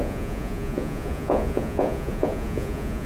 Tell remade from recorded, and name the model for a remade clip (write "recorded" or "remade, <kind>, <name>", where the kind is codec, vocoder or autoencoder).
remade, vocoder, Vocos